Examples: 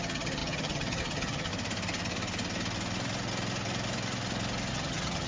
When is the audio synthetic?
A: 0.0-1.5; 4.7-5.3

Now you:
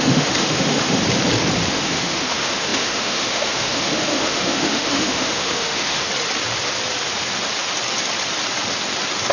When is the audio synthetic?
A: 0.0-1.0; 1.7-6.1

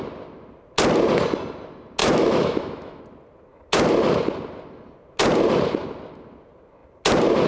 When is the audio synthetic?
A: 2.0-3.0

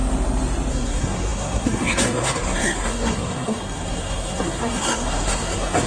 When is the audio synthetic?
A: 0.7-5.9

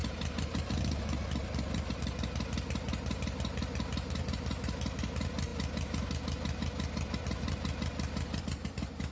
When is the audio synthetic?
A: none

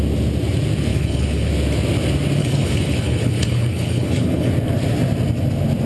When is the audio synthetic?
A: 0.9-1.5; 2.4-4.5

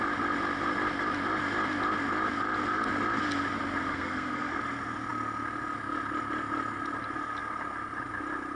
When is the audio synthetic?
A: 3.9-4.6

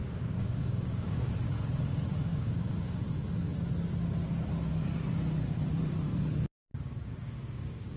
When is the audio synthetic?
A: 0.0-1.3; 2.3-3.0; 6.7-8.0